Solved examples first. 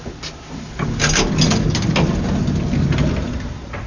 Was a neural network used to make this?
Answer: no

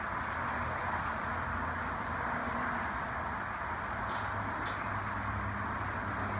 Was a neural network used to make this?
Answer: no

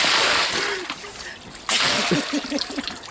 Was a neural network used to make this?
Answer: no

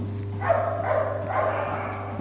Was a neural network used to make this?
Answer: no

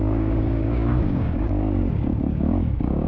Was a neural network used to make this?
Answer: yes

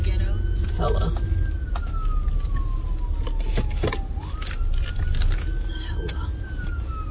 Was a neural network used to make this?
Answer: no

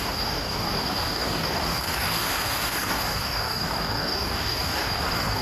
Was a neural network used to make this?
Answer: yes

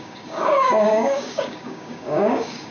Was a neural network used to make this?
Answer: yes